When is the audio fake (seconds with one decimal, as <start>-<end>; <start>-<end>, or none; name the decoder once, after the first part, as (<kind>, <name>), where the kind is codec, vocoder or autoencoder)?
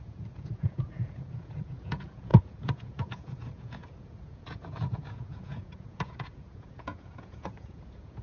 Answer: 0.0-8.2 (vocoder, Vocos)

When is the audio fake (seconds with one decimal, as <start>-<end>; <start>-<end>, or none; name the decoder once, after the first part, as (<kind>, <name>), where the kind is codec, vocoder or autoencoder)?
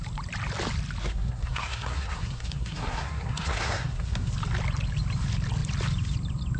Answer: 1.0-4.3 (codec, SNAC)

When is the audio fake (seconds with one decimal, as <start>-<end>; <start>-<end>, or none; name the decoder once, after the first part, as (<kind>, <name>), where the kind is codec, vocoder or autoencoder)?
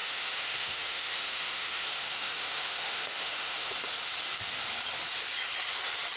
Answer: 0.0-3.7 (autoencoder, DAC-VAE)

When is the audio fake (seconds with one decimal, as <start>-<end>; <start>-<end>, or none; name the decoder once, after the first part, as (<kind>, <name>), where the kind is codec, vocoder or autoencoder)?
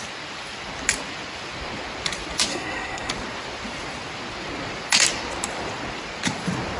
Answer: 2.5-3.1 (codec, SNAC)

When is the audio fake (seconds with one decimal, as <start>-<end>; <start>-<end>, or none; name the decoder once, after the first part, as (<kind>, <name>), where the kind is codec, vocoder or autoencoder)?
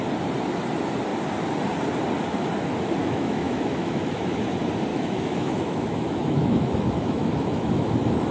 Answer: 3.0-4.4 (autoencoder, DAC-VAE); 4.9-8.3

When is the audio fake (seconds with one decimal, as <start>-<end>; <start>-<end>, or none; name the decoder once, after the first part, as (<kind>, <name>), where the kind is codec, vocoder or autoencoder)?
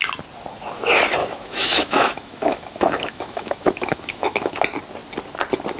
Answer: 1.2-4.5 (autoencoder, DAC-VAE)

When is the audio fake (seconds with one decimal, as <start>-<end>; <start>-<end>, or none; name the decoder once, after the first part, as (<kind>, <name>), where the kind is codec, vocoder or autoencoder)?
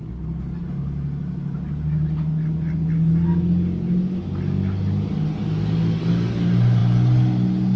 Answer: none